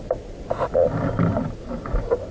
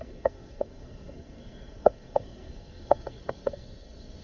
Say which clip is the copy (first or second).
second